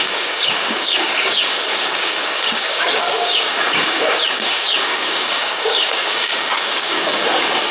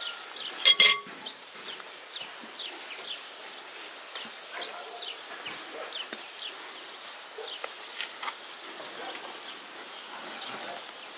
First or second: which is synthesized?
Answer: first